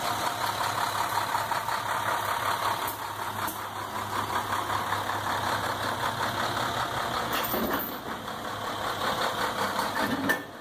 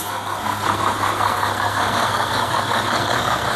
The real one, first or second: first